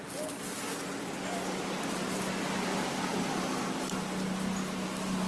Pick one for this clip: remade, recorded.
recorded